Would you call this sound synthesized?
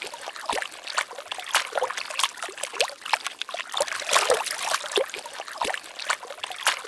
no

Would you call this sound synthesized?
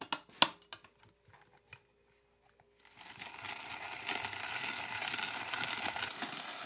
no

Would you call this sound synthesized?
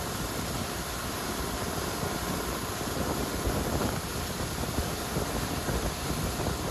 yes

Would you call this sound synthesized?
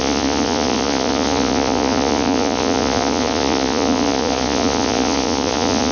yes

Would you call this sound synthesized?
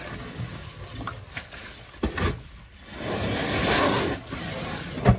no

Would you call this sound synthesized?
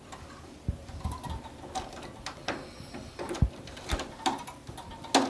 no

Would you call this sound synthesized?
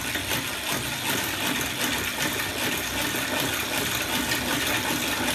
no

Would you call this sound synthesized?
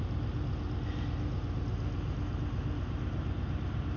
no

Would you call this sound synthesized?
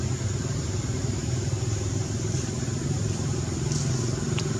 yes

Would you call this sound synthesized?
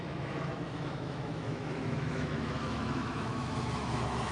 yes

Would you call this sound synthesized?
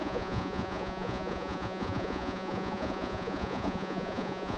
yes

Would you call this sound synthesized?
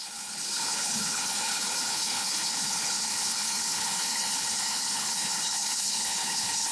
yes